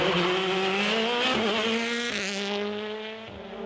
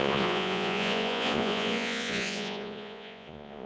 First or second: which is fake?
second